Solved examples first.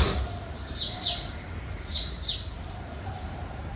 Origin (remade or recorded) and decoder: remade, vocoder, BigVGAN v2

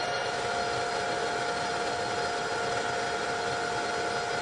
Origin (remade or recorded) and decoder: recorded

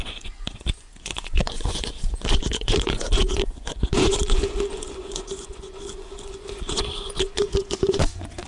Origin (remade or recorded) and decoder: remade, vocoder, Vocos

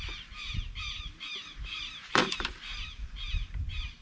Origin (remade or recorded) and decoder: remade, vocoder, BigVGAN v2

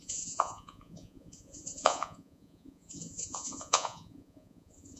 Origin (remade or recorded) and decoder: remade, vocoder, Vocos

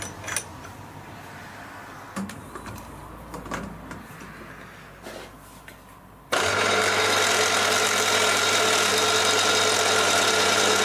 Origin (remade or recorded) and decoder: recorded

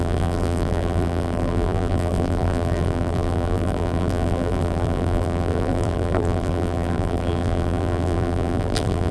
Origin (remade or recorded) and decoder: remade, vocoder, BigVGAN v2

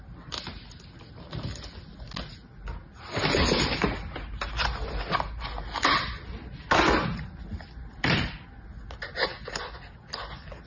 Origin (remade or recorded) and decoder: recorded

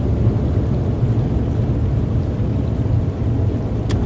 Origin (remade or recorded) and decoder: recorded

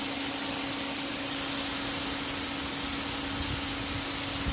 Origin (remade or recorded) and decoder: recorded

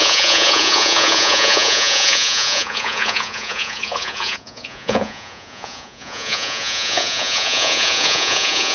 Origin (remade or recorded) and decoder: remade, vocoder, Vocos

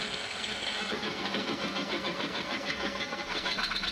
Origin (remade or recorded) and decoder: remade, codec, SNAC